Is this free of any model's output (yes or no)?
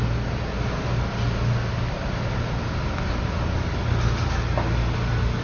yes